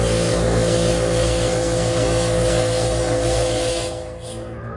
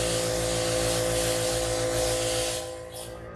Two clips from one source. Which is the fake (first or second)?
first